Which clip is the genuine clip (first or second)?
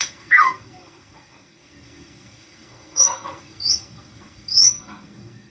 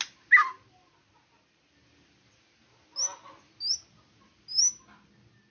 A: second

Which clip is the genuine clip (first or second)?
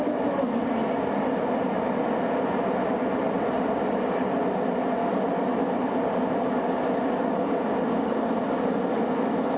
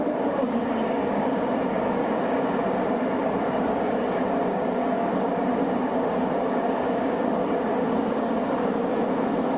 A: first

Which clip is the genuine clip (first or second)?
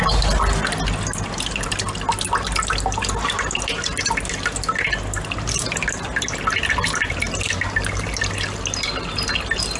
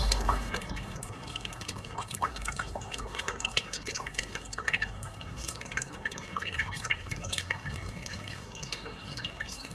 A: first